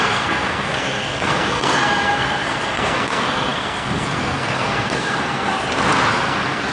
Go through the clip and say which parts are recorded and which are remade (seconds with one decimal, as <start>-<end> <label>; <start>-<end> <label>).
0.0-5.5 remade; 5.5-6.1 recorded; 6.1-6.7 remade